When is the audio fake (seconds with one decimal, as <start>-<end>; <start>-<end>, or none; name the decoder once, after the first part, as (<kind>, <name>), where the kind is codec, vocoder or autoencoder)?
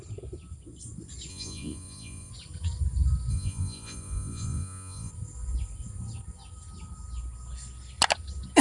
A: 1.3-2.3 (vocoder, Vocos); 3.3-5.1